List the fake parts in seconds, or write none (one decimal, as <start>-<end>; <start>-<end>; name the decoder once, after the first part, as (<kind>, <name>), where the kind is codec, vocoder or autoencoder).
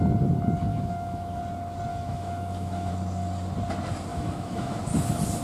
0.7-1.4 (autoencoder, DAC-VAE); 1.9-2.9; 4.1-4.8